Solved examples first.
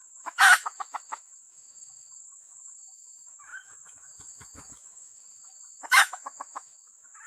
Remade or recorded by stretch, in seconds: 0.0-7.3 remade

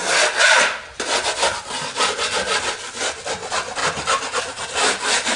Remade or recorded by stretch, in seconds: 0.0-5.4 recorded

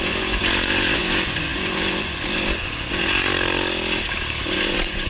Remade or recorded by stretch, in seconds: 0.0-3.3 remade; 3.3-4.4 recorded; 4.4-5.1 remade

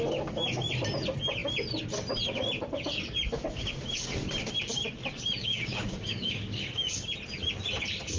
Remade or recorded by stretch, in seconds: 0.0-5.4 recorded; 5.4-7.1 remade; 7.1-8.2 recorded

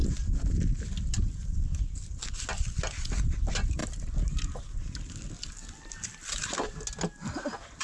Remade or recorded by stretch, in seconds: 0.0-7.8 recorded

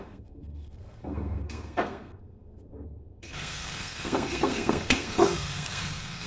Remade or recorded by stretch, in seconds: 0.0-6.3 remade

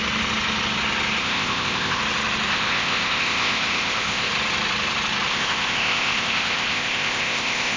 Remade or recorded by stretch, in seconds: 0.0-1.2 recorded; 1.2-2.0 remade; 2.0-2.5 recorded; 2.5-4.3 remade; 4.3-5.3 recorded; 5.3-7.8 remade